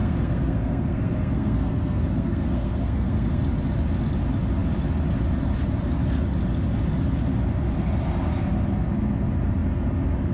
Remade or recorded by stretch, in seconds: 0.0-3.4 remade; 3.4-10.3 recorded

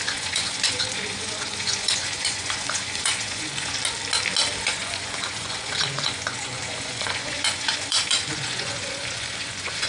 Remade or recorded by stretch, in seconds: 0.0-3.8 remade; 3.8-4.6 recorded; 4.6-9.9 remade